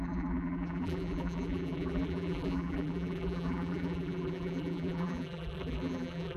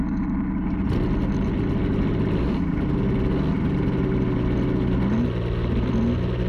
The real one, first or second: second